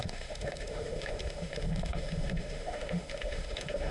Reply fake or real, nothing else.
fake